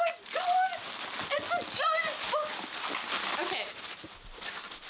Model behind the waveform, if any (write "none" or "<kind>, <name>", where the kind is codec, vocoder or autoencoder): none